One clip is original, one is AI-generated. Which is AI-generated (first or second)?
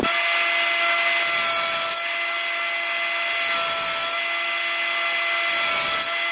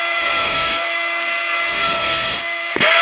second